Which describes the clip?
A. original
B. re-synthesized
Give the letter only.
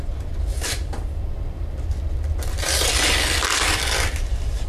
B